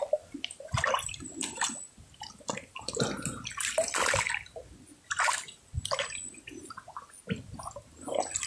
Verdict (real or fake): real